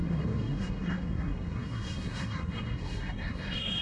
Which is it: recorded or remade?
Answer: remade